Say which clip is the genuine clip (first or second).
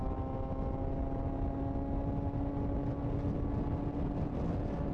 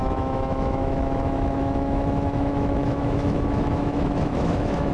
first